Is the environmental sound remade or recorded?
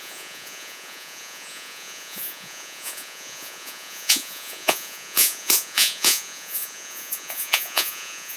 remade